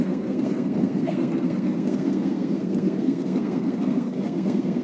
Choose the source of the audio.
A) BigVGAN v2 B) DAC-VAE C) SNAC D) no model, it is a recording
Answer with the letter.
C